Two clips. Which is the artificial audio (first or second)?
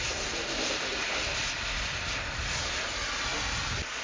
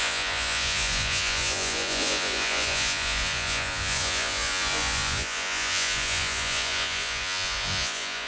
second